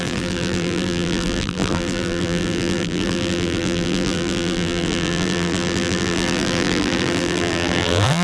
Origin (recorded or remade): remade